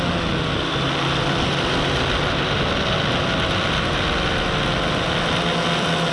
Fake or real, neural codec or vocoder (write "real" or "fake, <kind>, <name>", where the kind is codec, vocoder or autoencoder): real